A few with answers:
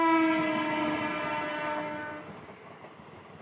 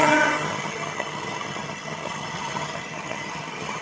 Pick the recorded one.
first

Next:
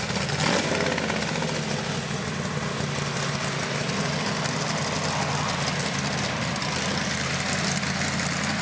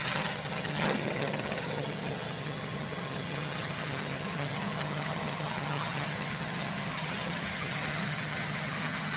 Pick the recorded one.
first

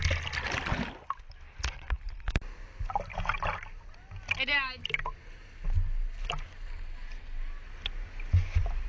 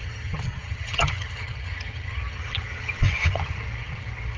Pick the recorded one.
first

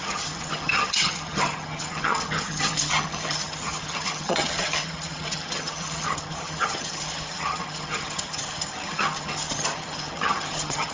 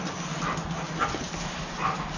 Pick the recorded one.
second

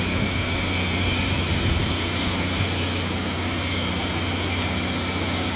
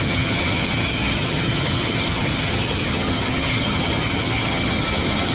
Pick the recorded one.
first